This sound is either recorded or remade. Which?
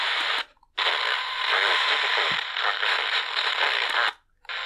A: recorded